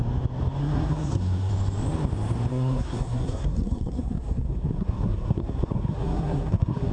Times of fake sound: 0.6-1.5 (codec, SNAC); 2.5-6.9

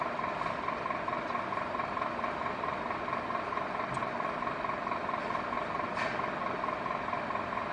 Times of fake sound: none